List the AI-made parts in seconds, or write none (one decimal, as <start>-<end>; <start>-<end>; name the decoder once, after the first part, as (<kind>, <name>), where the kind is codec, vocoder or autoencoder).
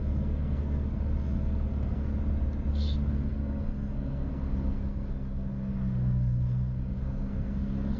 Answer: 0.0-2.1 (codec, SNAC); 2.7-8.0